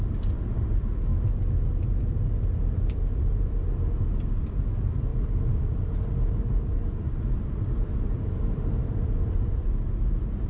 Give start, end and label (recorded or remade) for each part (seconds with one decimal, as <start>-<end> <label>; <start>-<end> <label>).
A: 0.0-1.1 remade; 1.1-3.1 recorded; 3.1-10.5 remade